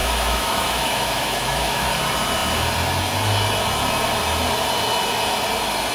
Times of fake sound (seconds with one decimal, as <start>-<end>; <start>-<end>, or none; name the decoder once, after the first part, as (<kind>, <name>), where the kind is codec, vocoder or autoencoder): 0.0-1.9 (autoencoder, DAC-VAE)